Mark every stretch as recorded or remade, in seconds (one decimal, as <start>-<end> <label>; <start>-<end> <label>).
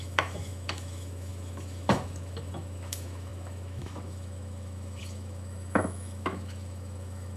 0.0-7.4 remade